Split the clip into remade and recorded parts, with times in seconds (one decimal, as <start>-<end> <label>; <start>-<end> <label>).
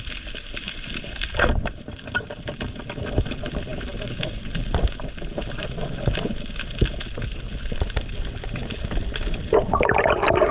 0.0-10.5 recorded